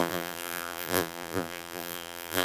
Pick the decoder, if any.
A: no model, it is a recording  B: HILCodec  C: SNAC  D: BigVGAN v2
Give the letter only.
D